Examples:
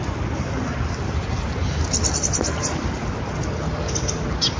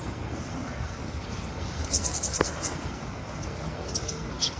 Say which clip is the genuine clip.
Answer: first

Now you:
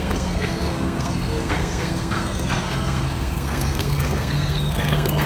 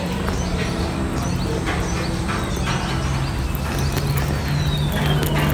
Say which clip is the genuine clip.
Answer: second